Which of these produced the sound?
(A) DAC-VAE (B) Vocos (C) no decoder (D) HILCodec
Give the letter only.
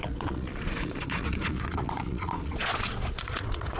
B